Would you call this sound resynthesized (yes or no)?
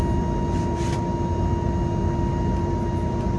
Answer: no